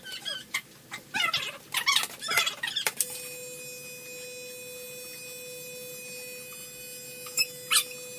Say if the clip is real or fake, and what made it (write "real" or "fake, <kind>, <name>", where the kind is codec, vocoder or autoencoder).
real